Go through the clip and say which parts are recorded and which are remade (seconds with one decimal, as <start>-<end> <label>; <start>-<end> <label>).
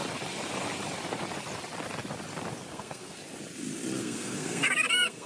0.0-2.7 recorded; 2.7-3.2 remade; 3.2-4.0 recorded; 4.0-5.3 remade